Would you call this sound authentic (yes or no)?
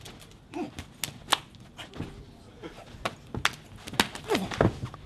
yes